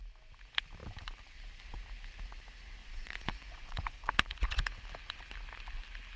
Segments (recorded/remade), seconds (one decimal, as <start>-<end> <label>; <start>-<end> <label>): 0.0-2.8 recorded; 2.8-4.6 remade; 4.6-6.2 recorded